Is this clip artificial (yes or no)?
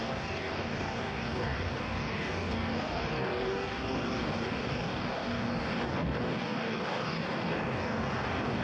yes